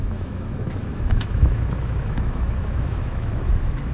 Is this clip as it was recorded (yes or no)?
no